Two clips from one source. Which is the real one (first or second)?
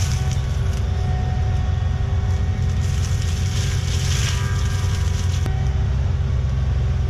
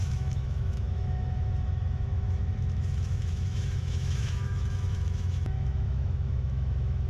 first